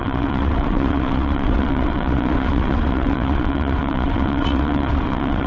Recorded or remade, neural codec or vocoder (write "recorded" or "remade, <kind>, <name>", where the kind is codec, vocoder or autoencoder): remade, vocoder, WaveNeXt